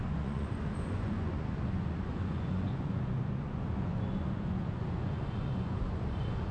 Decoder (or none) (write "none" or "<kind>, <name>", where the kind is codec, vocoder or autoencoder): vocoder, Vocos